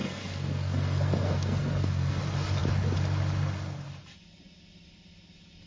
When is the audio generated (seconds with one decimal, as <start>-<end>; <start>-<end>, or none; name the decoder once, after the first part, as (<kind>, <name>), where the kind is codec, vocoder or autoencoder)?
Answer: 0.0-2.2 (codec, SNAC)